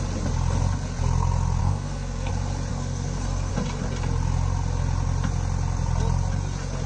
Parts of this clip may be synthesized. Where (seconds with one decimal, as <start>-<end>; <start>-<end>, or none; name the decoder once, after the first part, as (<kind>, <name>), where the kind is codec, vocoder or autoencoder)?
1.6-2.3 (codec, SNAC); 2.7-3.5